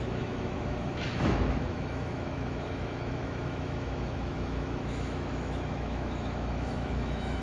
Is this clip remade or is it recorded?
remade